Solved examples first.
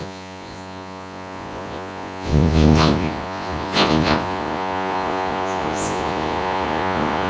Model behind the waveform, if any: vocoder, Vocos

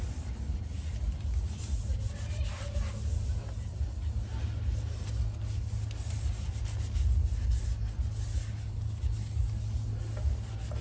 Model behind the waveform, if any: none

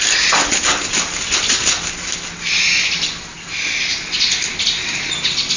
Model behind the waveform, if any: none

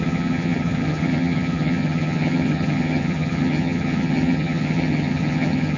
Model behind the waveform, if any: vocoder, HiFi-GAN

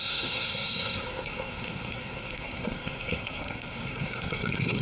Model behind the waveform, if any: codec, SNAC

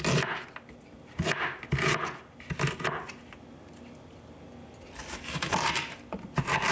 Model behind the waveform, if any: vocoder, BigVGAN v2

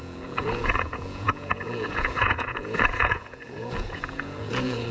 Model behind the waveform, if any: vocoder, Vocos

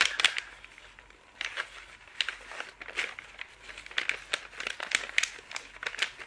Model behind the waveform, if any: none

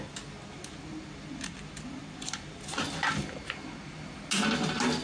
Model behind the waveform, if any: none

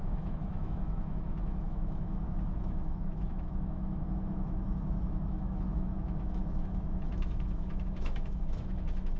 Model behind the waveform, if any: autoencoder, DAC-VAE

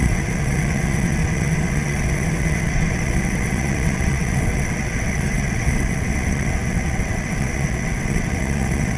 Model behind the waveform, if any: vocoder, WaveNeXt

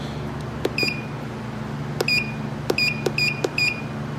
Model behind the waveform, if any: none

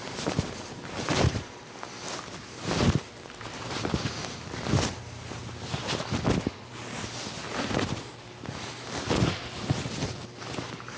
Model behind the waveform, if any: none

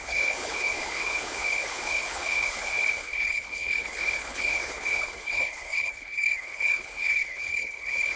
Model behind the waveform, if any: codec, HILCodec